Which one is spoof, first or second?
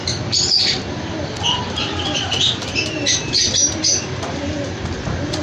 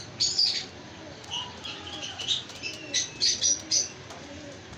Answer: first